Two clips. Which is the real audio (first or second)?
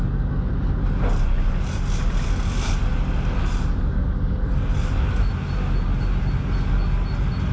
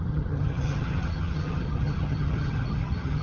first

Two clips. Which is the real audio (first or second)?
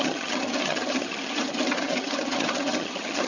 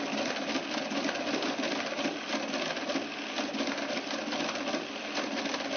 second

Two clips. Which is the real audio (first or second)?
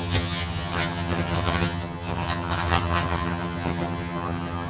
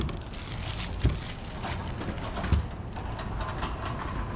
second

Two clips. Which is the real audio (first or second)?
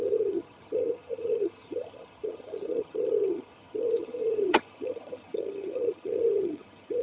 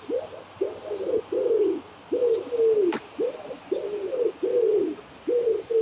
second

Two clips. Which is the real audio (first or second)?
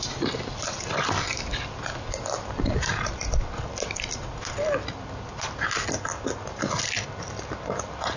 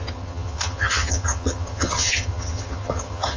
first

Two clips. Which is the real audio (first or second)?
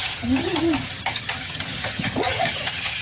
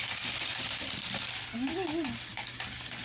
second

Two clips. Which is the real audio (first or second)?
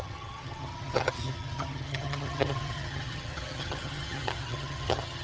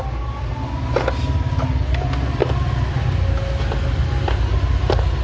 second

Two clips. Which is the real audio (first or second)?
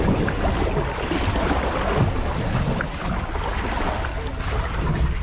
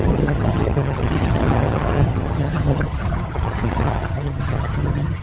first